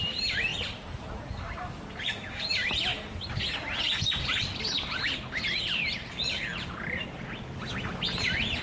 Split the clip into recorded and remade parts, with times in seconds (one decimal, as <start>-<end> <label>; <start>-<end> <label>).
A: 0.0-0.5 recorded; 0.5-1.0 remade; 1.0-8.6 recorded